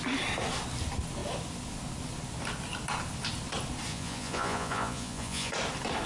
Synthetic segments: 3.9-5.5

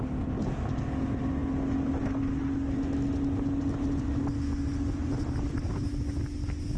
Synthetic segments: none

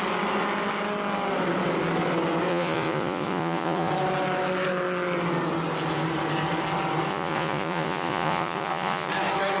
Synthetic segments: 2.5-3.9; 7.1-9.1

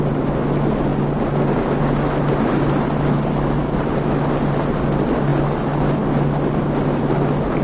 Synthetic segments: none

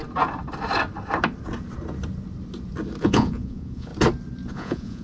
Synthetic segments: 3.0-3.9; 4.5-5.0

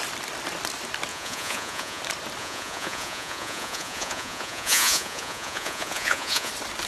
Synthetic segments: 1.1-2.0; 2.4-6.5